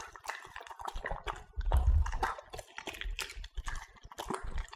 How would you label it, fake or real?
real